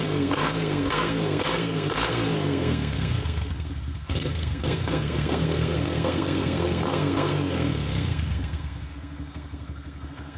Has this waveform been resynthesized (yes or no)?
yes